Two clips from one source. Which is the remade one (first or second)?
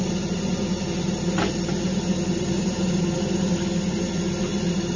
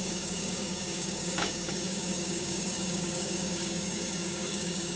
second